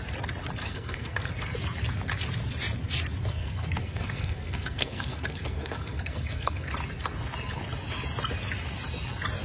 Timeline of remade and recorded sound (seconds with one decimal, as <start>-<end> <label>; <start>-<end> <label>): 0.0-0.6 recorded; 0.6-1.3 remade; 1.3-3.3 recorded; 3.3-6.7 remade; 6.7-9.4 recorded